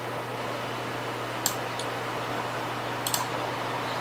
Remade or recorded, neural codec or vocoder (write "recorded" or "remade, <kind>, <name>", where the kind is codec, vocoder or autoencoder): recorded